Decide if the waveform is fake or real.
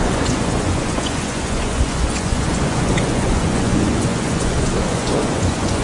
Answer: fake